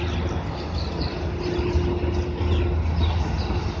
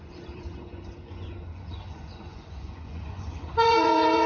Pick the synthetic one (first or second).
second